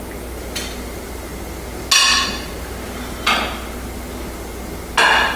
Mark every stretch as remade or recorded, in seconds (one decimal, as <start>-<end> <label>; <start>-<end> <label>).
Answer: 0.0-5.4 recorded